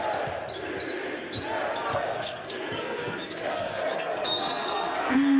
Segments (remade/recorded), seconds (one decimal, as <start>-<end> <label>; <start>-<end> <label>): 0.0-1.9 recorded; 1.9-5.4 remade